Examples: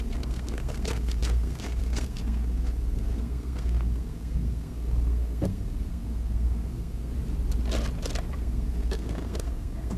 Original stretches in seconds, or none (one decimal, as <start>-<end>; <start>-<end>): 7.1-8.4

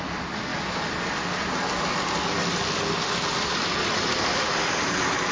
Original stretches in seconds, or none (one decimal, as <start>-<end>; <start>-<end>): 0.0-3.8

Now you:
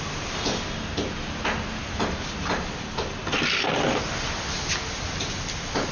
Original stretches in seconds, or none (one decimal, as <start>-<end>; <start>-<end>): 0.0-5.9

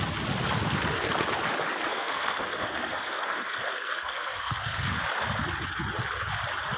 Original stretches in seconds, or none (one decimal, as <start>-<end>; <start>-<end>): 0.0-1.9; 5.0-6.8